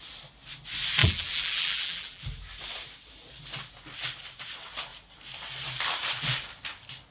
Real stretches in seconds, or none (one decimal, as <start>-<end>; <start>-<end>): 0.0-1.0; 2.2-7.1